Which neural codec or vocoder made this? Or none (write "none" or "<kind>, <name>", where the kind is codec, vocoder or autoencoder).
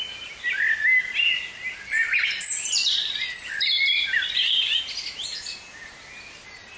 none